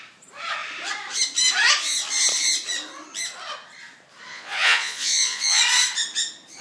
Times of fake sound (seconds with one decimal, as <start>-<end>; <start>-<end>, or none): 4.3-5.6